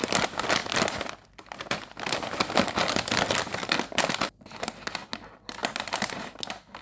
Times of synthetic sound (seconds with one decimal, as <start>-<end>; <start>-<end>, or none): none